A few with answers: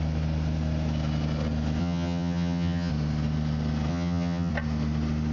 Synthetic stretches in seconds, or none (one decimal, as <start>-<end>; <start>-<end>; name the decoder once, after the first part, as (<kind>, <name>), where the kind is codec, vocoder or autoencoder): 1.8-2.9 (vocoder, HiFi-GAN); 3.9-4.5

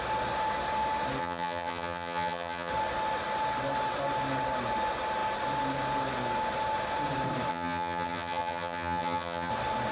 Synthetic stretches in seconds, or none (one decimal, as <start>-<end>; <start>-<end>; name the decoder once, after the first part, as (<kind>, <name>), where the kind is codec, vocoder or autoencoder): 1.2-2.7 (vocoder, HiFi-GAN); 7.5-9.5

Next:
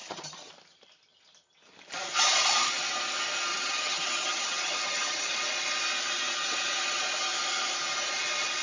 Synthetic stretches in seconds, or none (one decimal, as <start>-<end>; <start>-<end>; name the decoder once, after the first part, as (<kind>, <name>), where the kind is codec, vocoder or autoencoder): 0.0-0.5 (vocoder, HiFi-GAN); 3.5-5.4

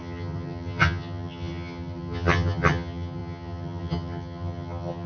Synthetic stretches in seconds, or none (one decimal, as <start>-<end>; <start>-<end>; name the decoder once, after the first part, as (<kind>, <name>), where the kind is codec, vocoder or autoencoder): 0.0-5.1 (vocoder, HiFi-GAN)

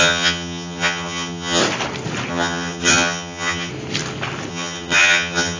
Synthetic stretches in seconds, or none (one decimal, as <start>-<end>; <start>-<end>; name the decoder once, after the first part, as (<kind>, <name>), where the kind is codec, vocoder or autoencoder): 0.0-1.6 (vocoder, HiFi-GAN); 2.3-3.7; 4.5-5.6

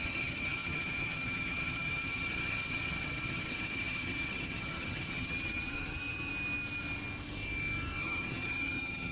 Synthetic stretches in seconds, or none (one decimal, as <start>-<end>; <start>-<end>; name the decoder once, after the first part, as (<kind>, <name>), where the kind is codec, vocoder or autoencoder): 0.0-6.3 (vocoder, HiFi-GAN); 8.0-9.1

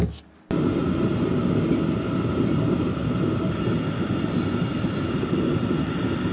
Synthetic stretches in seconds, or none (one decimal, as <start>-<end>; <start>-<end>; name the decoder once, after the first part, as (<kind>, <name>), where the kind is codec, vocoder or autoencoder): none

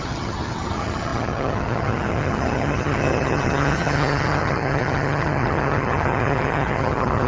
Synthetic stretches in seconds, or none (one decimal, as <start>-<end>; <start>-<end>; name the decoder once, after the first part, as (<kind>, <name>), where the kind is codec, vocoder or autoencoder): 0.0-7.3 (vocoder, HiFi-GAN)